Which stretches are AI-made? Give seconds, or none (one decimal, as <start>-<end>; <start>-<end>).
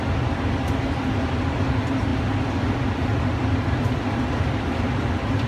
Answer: none